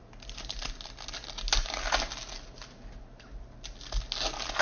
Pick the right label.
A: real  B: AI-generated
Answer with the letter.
A